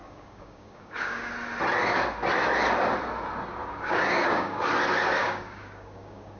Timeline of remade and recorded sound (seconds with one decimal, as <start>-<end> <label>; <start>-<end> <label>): 0.0-1.3 remade; 1.3-3.6 recorded; 3.6-4.7 remade; 4.7-5.2 recorded; 5.2-6.4 remade